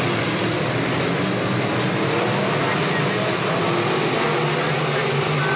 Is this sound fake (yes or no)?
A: no